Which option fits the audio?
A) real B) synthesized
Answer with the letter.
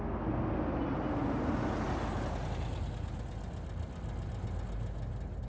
A